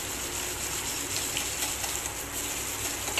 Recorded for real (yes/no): yes